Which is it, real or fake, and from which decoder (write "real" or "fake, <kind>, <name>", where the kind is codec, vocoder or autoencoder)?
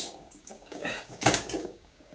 fake, codec, DAC